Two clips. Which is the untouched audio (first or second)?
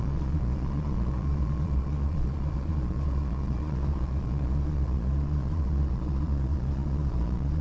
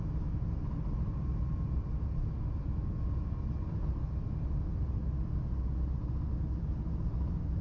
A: second